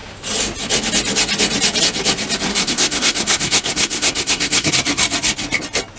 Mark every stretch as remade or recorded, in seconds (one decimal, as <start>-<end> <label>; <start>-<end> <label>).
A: 0.0-2.5 recorded; 2.5-4.7 remade; 4.7-6.0 recorded